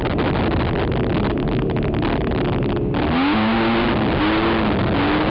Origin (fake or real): real